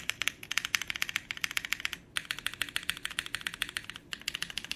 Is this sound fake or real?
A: real